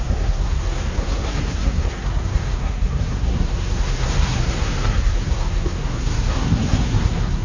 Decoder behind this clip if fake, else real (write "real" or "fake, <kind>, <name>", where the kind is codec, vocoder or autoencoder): fake, codec, SNAC